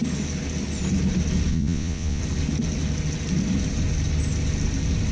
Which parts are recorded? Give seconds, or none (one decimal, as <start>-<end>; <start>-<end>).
0.0-1.5; 2.2-5.1